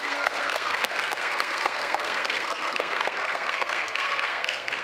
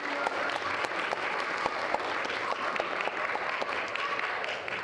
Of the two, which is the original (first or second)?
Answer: second